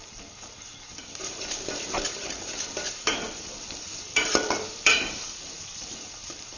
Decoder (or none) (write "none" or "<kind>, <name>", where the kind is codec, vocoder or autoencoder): vocoder, BigVGAN v2